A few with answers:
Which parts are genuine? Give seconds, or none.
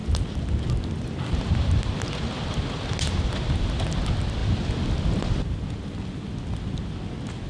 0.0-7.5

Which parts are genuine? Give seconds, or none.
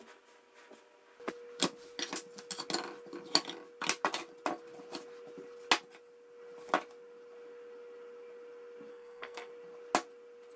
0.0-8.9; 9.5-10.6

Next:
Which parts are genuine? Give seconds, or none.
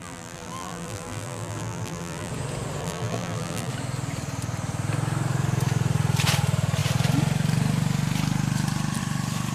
2.3-2.8; 3.7-9.5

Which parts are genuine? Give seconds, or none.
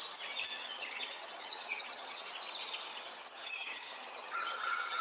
0.0-0.6; 2.3-2.9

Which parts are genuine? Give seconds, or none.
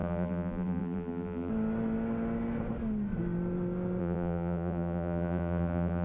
1.5-4.0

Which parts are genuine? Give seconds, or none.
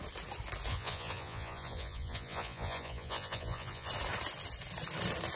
0.0-0.7; 3.9-5.4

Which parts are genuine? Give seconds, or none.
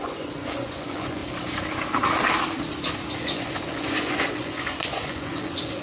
1.2-3.2